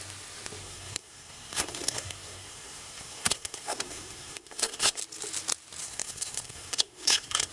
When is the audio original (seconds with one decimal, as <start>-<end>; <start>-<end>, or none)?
0.0-0.6; 5.0-5.8